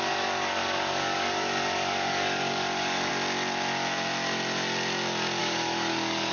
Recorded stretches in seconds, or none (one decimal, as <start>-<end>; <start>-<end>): 3.1-5.4